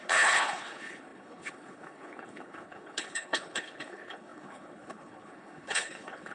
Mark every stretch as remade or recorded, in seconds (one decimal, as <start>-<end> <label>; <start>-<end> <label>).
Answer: 0.0-6.3 remade